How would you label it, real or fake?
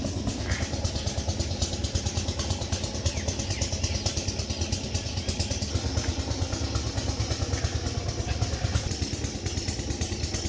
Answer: real